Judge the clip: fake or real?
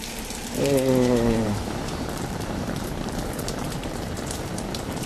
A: fake